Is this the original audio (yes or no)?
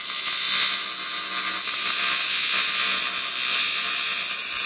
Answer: yes